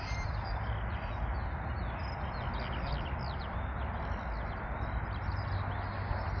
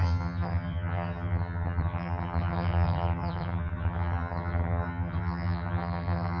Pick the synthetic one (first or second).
second